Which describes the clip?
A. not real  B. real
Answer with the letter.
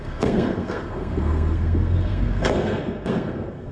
A